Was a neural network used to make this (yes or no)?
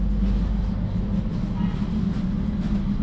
no